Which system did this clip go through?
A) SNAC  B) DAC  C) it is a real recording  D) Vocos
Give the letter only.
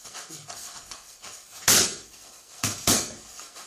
A